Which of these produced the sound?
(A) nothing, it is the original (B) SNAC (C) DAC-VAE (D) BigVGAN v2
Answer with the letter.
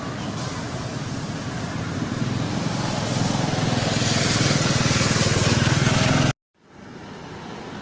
A